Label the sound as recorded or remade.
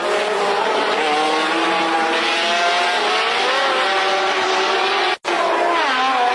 recorded